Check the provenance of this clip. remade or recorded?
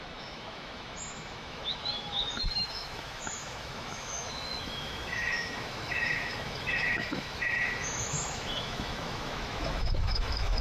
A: remade